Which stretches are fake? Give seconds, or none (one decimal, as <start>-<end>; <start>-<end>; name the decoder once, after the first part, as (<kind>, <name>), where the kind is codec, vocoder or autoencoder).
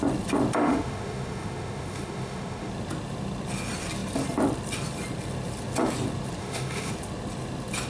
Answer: 0.6-2.7 (autoencoder, DAC-VAE); 6.4-6.9